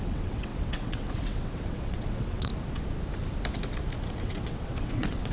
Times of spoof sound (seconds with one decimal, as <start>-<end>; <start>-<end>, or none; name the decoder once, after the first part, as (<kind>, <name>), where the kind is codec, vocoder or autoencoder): 0.0-2.5 (vocoder, WaveNeXt); 4.2-5.3